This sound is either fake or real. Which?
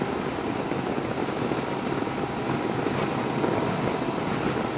real